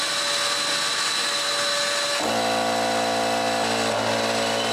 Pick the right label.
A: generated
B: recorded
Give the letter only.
B